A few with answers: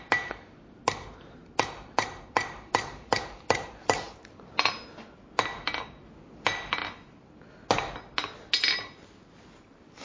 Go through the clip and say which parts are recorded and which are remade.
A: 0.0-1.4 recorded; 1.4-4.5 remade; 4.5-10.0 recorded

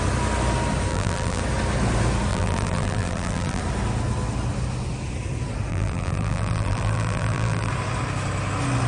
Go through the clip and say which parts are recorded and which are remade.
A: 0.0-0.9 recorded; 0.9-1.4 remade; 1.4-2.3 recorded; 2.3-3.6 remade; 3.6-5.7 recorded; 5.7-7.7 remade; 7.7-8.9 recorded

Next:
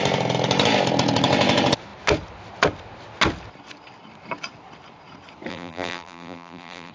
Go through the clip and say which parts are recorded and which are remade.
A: 0.0-5.5 recorded; 5.5-6.9 remade